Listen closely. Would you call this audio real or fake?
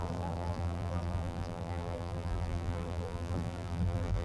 fake